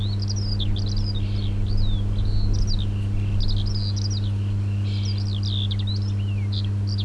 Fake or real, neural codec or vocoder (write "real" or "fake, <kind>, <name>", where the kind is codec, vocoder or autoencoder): real